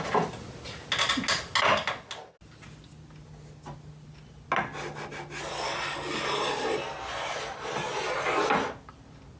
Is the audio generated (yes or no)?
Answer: no